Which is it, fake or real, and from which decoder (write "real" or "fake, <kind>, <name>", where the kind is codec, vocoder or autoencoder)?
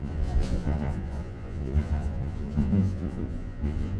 fake, vocoder, Vocos